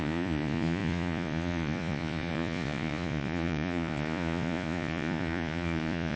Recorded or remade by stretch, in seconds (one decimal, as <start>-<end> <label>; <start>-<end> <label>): 0.0-6.2 remade